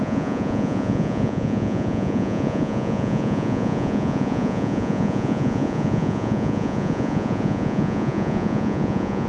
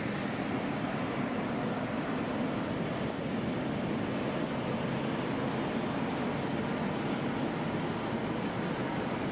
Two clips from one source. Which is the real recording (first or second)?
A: second